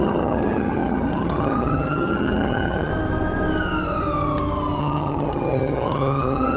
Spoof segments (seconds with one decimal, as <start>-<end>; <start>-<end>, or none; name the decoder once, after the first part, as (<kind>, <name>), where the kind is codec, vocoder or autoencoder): 0.0-2.9 (vocoder, HiFi-GAN); 4.8-6.6